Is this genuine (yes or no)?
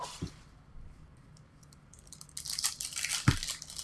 yes